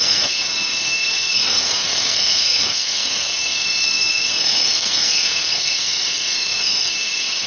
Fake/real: fake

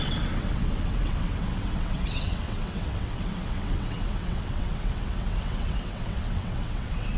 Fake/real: fake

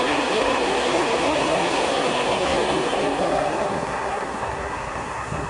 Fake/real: fake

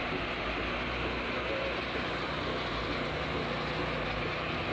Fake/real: real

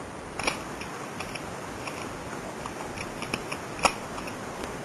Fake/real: real